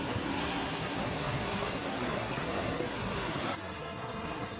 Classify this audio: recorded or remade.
remade